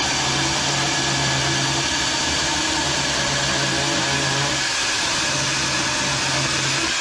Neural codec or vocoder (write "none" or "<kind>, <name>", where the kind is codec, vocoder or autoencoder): none